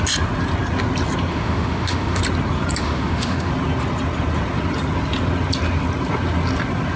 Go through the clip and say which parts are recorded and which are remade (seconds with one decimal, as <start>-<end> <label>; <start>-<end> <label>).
0.0-1.3 recorded; 1.3-2.2 remade; 2.2-2.8 recorded; 2.8-3.5 remade; 3.5-7.0 recorded